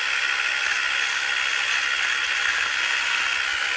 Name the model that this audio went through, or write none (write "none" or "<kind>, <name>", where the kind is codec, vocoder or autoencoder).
none